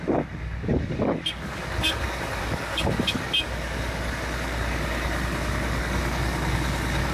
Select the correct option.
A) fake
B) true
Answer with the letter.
A